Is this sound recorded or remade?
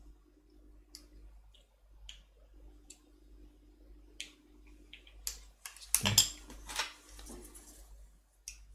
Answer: recorded